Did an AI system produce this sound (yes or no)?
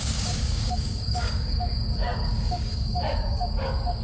yes